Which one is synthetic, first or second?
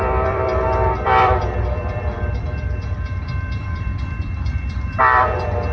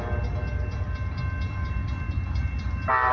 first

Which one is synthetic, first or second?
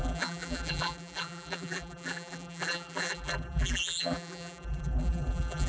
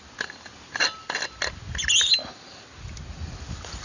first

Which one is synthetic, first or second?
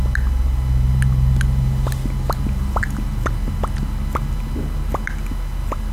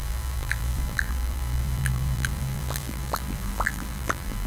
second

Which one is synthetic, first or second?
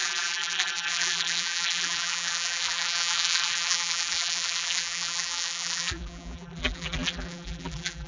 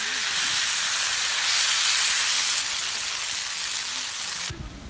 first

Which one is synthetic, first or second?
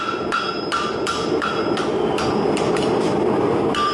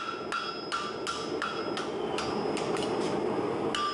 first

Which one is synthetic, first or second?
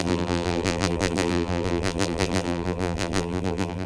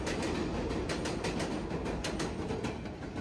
first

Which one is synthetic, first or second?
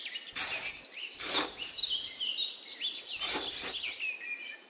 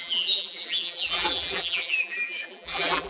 second